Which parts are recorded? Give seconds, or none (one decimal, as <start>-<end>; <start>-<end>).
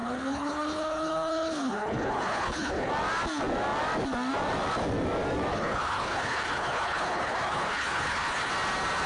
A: 2.9-5.5; 8.5-9.1